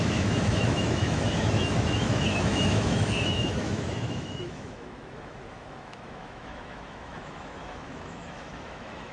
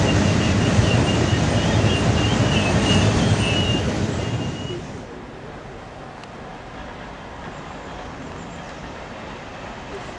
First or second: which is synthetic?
first